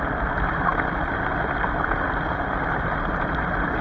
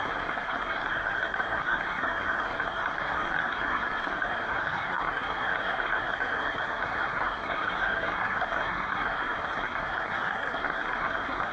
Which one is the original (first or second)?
first